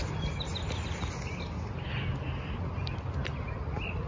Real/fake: real